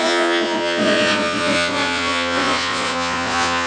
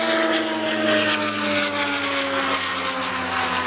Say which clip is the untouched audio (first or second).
second